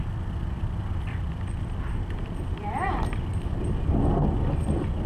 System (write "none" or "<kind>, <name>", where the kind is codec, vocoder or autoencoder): none